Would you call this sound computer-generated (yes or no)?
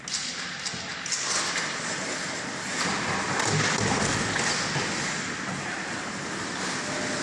no